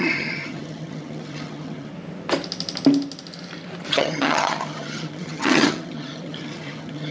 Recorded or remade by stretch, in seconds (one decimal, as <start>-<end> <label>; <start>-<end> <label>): 0.0-1.9 remade; 1.9-3.9 recorded; 3.9-7.1 remade